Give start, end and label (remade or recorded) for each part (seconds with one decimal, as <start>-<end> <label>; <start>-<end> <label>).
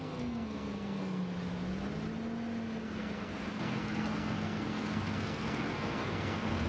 0.0-1.2 remade; 1.2-2.8 recorded; 2.8-6.7 remade